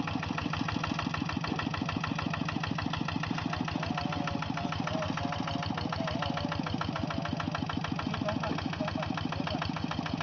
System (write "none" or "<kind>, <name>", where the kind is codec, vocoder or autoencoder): none